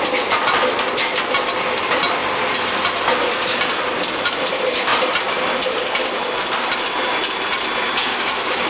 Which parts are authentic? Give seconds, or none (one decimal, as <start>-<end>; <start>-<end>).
0.0-8.0